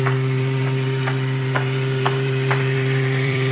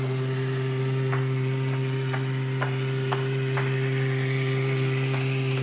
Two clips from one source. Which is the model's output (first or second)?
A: first